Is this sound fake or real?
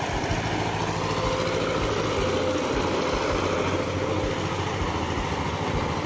real